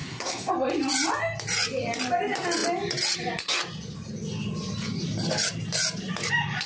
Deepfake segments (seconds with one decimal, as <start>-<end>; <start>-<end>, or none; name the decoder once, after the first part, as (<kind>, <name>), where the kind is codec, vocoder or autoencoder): 0.0-0.5 (codec, SNAC)